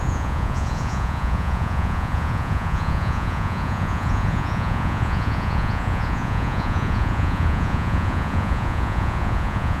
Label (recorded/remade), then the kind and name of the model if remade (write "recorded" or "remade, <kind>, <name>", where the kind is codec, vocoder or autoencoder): remade, vocoder, Vocos